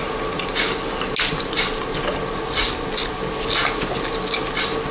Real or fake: real